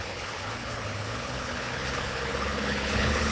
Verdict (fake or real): fake